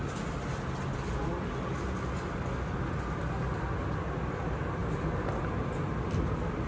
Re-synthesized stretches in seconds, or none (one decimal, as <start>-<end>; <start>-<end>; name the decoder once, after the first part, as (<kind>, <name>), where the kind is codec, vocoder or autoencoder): none